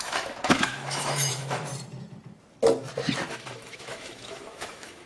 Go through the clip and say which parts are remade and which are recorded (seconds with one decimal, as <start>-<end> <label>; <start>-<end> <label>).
0.0-1.7 remade; 1.7-3.3 recorded; 3.3-5.1 remade